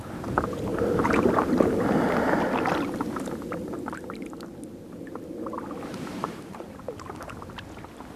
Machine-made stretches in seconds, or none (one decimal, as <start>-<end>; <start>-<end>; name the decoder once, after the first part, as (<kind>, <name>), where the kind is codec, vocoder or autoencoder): 0.7-1.5 (vocoder, BigVGAN v2); 5.9-6.8

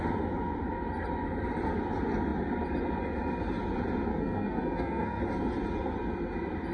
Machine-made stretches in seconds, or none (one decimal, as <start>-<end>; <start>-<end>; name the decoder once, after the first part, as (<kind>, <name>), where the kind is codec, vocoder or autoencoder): 4.1-5.2 (codec, SNAC)